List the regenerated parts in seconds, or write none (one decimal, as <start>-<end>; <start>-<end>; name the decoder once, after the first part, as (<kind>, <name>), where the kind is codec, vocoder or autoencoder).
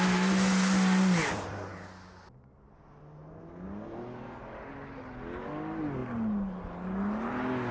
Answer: none